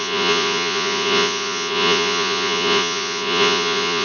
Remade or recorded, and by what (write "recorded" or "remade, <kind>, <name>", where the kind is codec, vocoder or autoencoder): remade, vocoder, Vocos